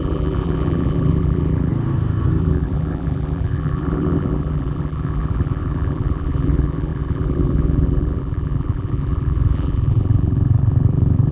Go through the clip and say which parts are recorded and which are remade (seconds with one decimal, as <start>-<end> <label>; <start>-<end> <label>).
0.0-1.7 remade; 1.7-2.4 recorded; 2.4-11.3 remade